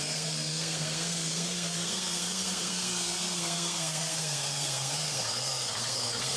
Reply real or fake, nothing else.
fake